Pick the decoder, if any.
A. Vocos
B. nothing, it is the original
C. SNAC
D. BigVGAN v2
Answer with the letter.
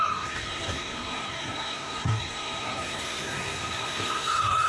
C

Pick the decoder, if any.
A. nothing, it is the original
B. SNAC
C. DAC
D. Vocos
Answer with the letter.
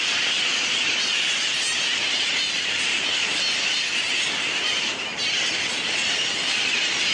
A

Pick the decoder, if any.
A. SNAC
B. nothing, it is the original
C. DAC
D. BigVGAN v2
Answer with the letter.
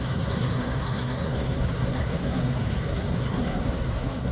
A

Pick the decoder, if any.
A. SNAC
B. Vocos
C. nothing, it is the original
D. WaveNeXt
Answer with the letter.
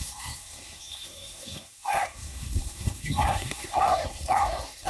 A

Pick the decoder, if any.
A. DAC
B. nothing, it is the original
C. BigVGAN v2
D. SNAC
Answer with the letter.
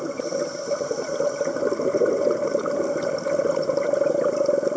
B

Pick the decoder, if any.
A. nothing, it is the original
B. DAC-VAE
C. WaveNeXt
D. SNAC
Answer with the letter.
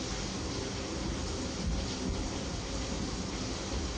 A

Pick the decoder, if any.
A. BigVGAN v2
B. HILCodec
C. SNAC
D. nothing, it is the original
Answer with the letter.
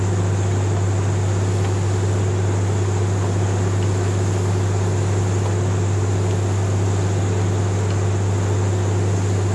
D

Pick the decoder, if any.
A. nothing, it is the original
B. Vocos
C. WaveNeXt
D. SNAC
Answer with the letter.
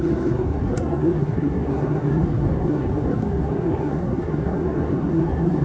D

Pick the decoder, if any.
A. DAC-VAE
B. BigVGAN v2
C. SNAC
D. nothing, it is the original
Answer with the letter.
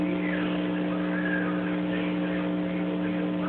D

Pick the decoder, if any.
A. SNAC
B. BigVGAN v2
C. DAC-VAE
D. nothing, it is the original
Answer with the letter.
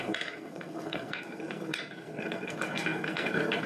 A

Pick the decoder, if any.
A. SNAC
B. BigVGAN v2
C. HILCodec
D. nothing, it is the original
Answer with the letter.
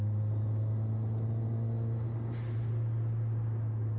D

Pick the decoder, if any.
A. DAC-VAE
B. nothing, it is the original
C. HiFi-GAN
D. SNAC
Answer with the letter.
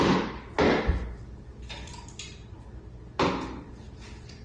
B